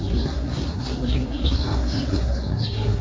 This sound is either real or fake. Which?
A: fake